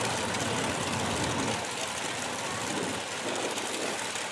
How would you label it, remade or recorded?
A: recorded